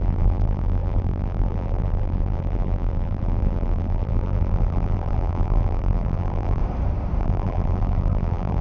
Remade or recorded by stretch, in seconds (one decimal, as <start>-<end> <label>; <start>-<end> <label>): 0.0-6.6 remade; 6.6-7.2 recorded; 7.2-8.6 remade